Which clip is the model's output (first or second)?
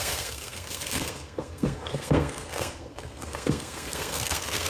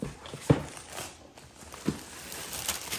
first